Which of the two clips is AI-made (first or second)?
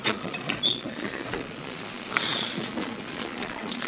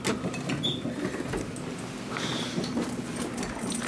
first